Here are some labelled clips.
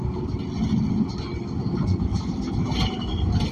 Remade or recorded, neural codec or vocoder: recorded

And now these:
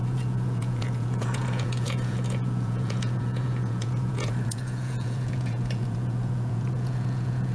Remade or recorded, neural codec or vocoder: remade, vocoder, Vocos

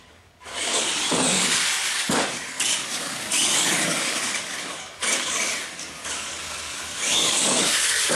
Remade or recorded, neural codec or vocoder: remade, codec, DAC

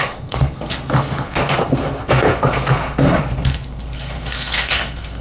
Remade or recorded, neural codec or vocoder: remade, codec, SNAC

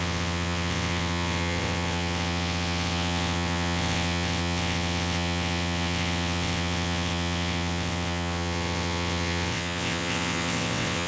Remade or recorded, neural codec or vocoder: remade, vocoder, WaveNeXt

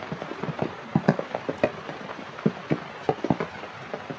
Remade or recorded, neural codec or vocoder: recorded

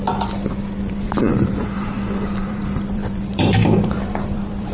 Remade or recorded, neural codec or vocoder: remade, vocoder, BigVGAN v2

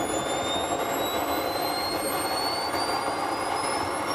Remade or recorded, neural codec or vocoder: recorded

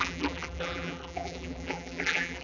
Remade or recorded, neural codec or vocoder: remade, vocoder, BigVGAN v2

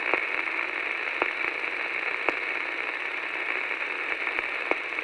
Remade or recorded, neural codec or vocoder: recorded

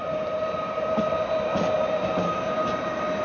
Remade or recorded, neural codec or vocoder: remade, vocoder, BigVGAN v2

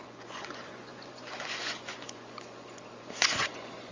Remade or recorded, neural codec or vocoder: remade, vocoder, Vocos